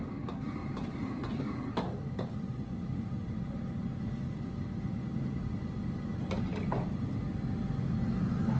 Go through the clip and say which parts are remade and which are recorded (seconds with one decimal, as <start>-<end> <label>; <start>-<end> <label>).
0.0-0.6 recorded; 0.6-3.7 remade; 3.7-8.6 recorded